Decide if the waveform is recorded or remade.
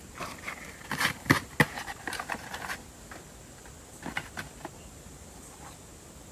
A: recorded